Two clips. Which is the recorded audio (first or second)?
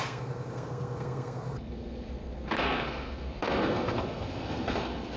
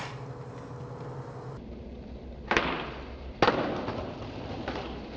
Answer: second